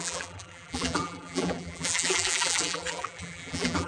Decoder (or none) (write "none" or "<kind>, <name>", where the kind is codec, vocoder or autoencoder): vocoder, BigVGAN v2